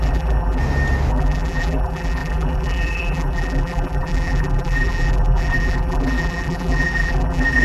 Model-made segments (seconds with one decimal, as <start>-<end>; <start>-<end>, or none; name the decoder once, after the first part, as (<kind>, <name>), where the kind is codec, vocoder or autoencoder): 0.0-0.6 (vocoder, BigVGAN v2); 1.1-7.6